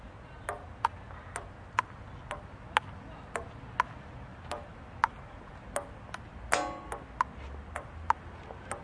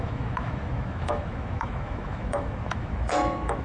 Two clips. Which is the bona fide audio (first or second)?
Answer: first